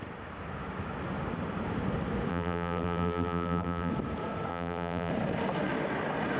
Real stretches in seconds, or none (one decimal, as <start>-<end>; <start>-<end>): 0.0-2.3; 3.9-4.5; 5.1-6.4